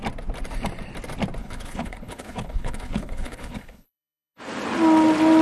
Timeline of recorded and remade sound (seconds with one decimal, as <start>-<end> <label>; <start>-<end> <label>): 0.0-1.4 recorded; 1.4-4.4 remade; 4.4-5.4 recorded